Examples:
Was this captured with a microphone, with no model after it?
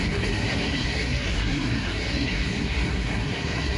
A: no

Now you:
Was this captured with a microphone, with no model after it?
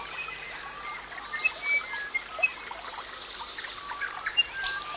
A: yes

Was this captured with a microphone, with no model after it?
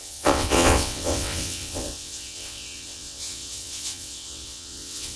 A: no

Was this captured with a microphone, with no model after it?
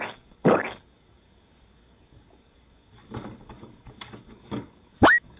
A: no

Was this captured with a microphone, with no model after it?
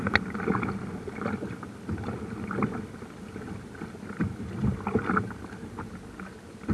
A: yes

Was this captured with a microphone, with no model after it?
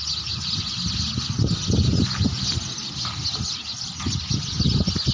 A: yes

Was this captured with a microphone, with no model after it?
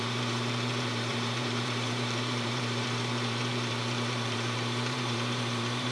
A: no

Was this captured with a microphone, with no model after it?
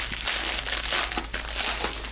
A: yes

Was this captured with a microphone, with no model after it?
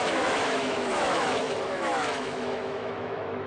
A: no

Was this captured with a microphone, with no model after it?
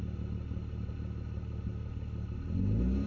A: yes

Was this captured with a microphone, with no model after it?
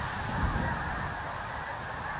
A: yes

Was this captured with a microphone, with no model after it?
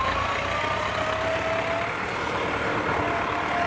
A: yes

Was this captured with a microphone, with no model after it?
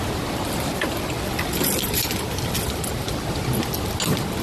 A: yes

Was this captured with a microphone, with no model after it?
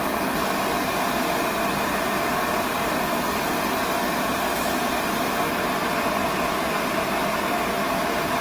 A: no